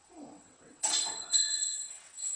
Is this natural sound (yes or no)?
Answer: no